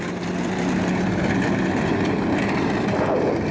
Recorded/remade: recorded